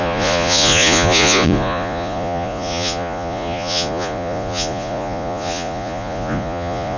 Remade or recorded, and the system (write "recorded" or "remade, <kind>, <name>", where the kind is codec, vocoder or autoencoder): remade, vocoder, Vocos